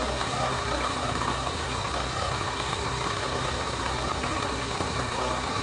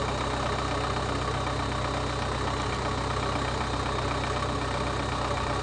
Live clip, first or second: second